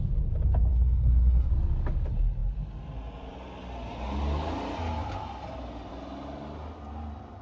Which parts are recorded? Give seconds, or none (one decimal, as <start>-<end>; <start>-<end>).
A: 0.0-0.7; 1.5-7.4